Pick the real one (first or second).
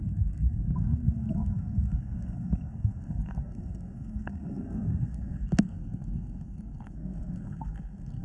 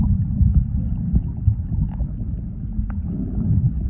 second